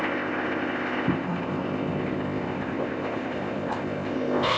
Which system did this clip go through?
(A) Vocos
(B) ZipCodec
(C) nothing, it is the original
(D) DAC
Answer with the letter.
B